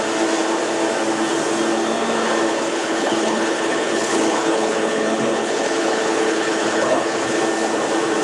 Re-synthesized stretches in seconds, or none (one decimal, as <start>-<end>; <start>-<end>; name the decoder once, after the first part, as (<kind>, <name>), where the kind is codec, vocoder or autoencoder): 2.5-7.4 (codec, HILCodec)